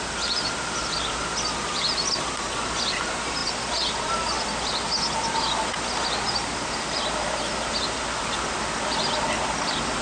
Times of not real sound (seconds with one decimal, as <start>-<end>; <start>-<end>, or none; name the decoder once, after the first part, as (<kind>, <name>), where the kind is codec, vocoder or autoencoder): none